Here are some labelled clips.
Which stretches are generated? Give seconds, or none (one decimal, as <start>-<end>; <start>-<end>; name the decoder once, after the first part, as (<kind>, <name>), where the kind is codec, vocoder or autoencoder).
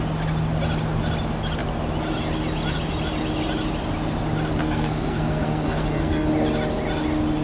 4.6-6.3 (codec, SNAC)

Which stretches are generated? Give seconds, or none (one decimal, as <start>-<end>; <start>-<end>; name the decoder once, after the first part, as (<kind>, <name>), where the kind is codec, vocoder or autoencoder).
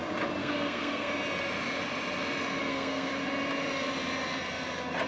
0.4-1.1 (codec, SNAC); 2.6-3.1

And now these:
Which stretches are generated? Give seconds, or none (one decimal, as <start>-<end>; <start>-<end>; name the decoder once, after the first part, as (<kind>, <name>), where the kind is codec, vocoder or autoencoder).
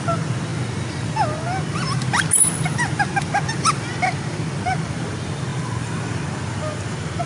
none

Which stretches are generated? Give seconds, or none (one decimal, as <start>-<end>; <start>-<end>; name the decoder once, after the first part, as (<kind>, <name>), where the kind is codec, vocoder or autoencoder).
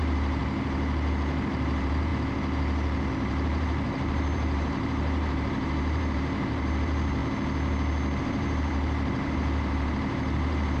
0.0-0.4 (vocoder, BigVGAN v2); 1.5-2.1; 3.1-7.2; 8.2-10.8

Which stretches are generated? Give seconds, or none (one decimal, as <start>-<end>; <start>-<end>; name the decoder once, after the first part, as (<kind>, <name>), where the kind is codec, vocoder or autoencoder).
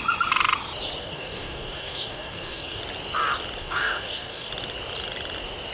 1.0-2.8 (codec, DAC); 3.6-4.5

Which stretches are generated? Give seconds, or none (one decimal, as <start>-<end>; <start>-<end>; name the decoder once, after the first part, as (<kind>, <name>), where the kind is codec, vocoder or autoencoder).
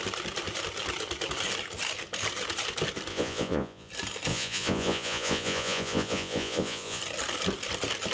3.1-3.9 (vocoder, Vocos); 4.3-7.0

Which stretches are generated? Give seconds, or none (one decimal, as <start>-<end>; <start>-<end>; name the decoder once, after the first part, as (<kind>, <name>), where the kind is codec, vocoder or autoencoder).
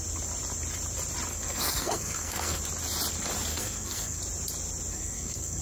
1.3-2.6 (codec, SNAC); 3.5-4.2; 4.9-5.6